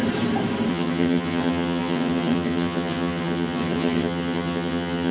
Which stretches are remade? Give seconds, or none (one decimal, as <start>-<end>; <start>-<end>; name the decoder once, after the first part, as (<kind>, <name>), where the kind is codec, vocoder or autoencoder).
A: 0.7-5.1 (vocoder, HiFi-GAN)